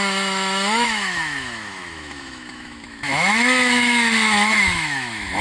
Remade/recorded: remade